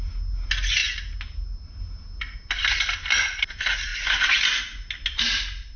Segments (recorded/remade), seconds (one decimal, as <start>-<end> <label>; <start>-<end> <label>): 0.0-5.8 recorded